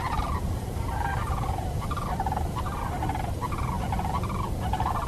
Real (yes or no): no